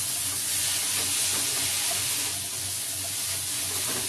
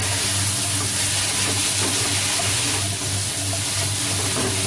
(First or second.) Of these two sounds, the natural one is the second